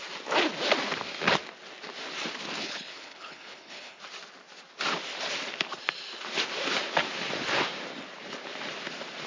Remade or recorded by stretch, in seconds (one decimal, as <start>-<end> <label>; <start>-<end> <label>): 0.0-2.6 recorded; 2.6-4.0 remade; 4.0-9.3 recorded